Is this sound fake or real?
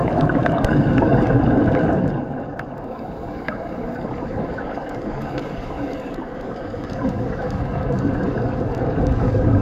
fake